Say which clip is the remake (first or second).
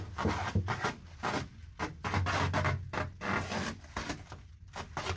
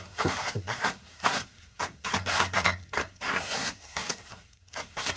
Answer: second